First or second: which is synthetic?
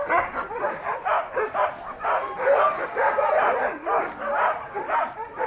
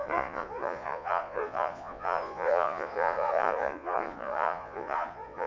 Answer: second